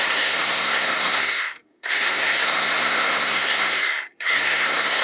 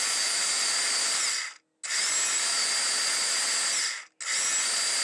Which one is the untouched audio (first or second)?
second